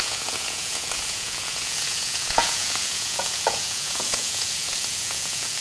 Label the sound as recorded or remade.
remade